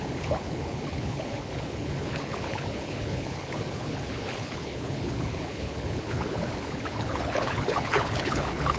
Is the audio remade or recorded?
remade